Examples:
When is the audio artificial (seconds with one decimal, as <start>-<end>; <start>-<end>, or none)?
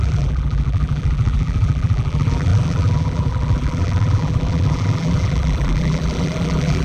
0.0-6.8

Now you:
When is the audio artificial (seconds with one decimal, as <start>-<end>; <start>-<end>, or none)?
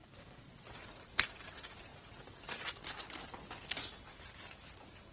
1.0-1.9; 4.5-5.1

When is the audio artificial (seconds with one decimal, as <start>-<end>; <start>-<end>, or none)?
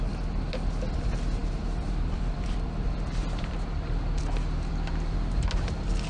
1.4-4.9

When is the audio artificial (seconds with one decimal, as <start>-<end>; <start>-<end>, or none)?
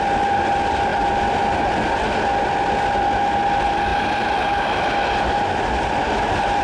none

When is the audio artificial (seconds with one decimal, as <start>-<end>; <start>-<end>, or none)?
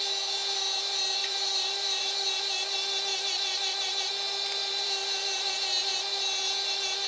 1.2-2.4; 3.1-4.1; 4.6-5.5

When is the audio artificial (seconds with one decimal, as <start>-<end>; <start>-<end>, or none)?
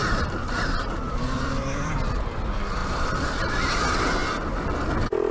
0.0-1.9; 2.8-3.6